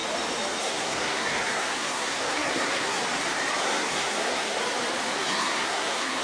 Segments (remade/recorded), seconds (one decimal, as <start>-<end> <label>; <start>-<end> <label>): 0.0-0.6 recorded; 0.6-3.0 remade; 3.0-3.6 recorded; 3.6-4.6 remade; 4.6-5.3 recorded; 5.3-6.2 remade